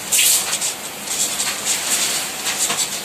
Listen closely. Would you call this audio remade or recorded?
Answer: recorded